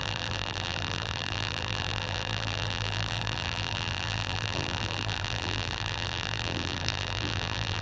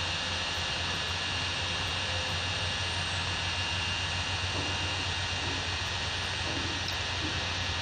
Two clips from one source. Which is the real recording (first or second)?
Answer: second